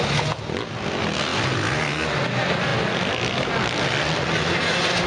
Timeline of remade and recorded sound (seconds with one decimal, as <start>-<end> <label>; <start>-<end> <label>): 0.0-5.1 recorded